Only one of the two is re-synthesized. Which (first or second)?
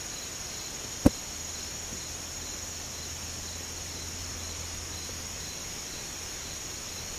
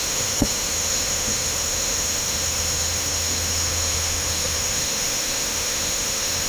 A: second